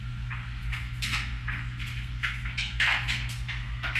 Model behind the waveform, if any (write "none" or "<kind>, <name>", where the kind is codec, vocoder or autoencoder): codec, SNAC